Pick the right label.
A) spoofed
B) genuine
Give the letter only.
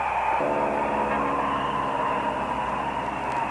B